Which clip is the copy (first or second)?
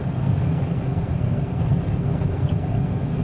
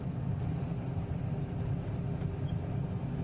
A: first